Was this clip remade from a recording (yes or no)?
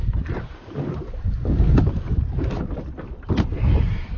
no